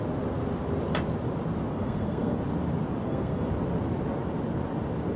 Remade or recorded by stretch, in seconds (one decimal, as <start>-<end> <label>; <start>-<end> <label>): 0.0-1.7 recorded; 1.7-2.4 remade; 2.4-3.0 recorded; 3.0-3.5 remade; 3.5-5.2 recorded